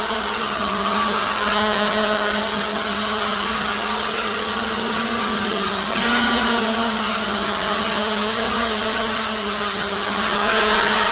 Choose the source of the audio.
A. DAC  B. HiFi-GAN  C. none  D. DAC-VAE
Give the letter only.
B